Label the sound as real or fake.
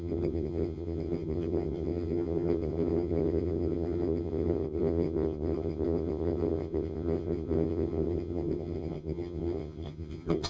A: fake